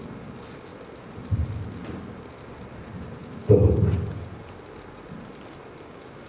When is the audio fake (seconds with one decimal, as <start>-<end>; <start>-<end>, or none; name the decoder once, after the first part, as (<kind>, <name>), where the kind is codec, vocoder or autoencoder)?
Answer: none